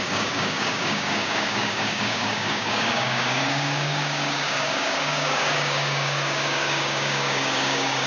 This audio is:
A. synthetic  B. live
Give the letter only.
A